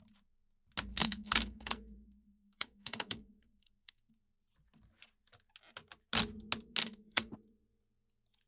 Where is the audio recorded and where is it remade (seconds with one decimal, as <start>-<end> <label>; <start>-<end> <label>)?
0.0-0.9 recorded; 0.9-4.1 remade; 4.1-6.8 recorded; 6.8-7.3 remade; 7.3-8.5 recorded